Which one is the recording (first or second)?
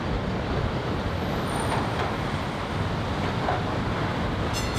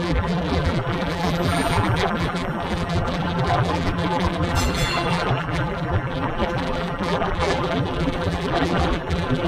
first